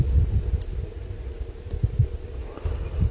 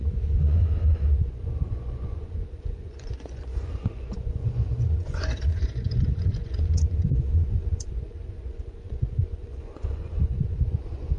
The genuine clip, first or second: first